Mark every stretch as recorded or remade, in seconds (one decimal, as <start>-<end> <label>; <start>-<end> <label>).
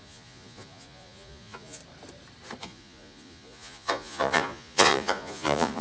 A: 0.0-1.8 remade; 1.8-2.6 recorded; 2.6-5.8 remade